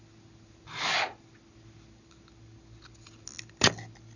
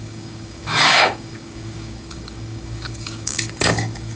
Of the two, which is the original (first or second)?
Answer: first